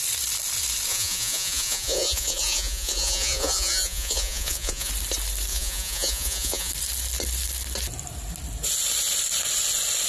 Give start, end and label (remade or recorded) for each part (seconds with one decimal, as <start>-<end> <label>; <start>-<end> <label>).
0.0-0.9 recorded; 0.9-4.9 remade; 4.9-5.5 recorded; 5.5-6.7 remade; 6.7-10.1 recorded